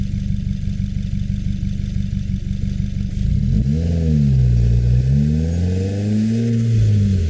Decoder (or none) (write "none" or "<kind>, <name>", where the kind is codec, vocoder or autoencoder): none